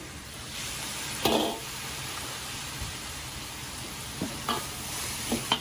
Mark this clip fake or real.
fake